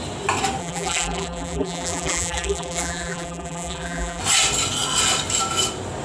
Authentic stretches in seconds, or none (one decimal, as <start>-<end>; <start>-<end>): 0.0-0.6; 4.2-6.0